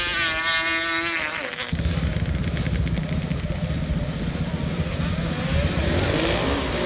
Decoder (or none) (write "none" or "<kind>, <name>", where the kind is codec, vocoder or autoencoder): none